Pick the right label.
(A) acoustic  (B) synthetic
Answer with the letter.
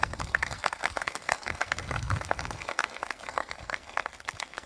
B